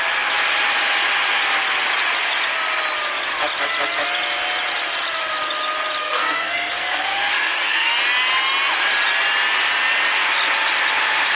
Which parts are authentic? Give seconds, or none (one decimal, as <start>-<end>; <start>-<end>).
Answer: 0.0-6.0; 7.9-11.3